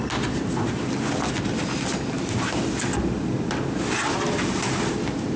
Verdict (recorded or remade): recorded